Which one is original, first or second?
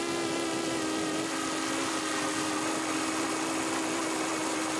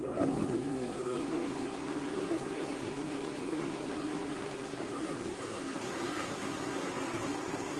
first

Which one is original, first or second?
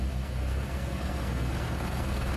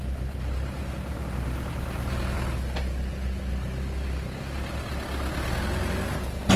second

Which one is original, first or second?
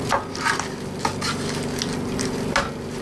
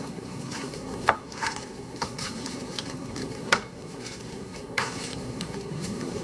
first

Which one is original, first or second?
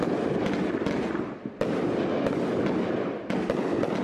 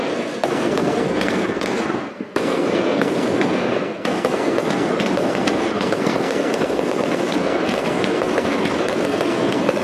first